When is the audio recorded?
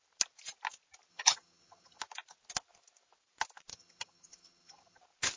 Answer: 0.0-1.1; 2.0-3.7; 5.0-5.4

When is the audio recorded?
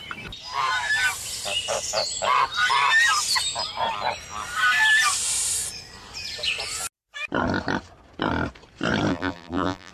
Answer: 0.0-9.1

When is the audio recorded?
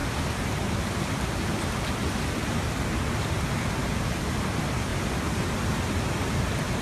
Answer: 2.3-6.8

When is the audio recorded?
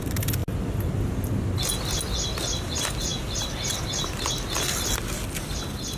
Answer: 0.0-6.0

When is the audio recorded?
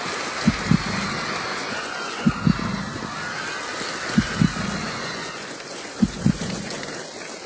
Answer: 0.0-1.5; 2.3-4.8; 6.9-7.5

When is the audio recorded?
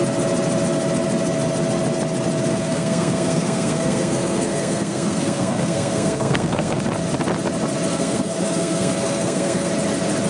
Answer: 0.0-2.5; 6.8-7.9; 9.7-10.3